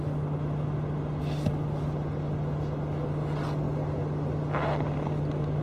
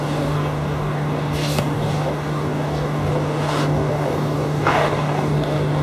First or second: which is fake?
second